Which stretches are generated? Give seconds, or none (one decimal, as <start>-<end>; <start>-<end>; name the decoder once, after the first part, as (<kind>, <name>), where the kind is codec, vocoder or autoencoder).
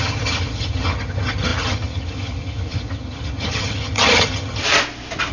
0.0-4.6 (vocoder, HiFi-GAN)